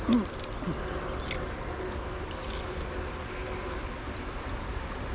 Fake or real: real